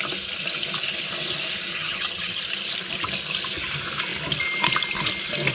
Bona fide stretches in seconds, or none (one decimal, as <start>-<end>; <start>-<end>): 0.0-1.7; 2.4-5.5